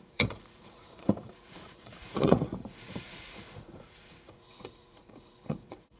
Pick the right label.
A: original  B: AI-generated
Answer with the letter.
B